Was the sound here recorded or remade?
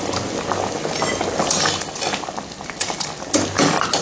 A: recorded